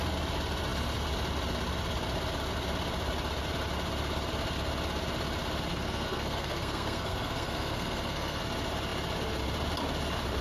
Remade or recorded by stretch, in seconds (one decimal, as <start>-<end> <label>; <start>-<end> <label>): 0.0-5.7 recorded; 5.7-8.4 remade; 8.4-10.4 recorded